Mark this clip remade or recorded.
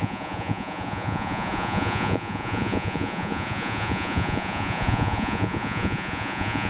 remade